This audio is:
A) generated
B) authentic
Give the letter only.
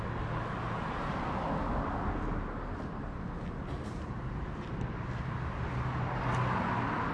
B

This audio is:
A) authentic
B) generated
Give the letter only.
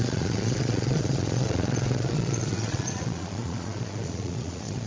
B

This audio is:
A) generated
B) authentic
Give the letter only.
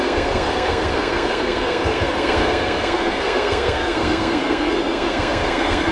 A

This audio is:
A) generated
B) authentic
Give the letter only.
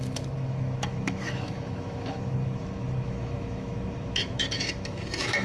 A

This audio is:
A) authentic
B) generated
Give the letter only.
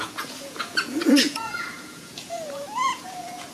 B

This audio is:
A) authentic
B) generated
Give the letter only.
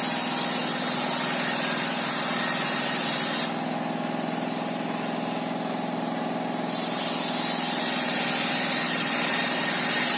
A